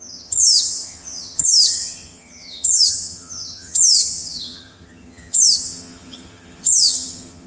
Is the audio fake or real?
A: fake